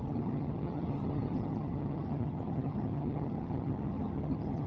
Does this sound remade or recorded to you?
remade